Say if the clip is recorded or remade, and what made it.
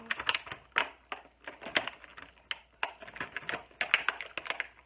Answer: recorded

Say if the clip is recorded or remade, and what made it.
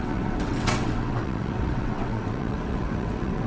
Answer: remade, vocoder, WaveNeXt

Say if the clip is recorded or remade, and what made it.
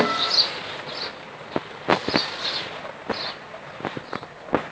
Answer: recorded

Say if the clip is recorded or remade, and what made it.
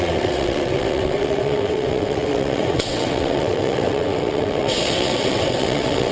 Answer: remade, vocoder, WaveNeXt